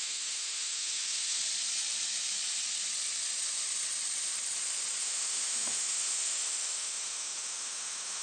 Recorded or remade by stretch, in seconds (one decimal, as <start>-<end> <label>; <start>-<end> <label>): 0.0-1.4 remade; 1.4-5.0 recorded; 5.0-8.2 remade